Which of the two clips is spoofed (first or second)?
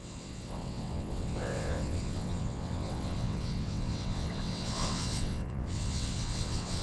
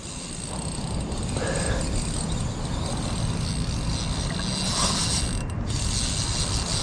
first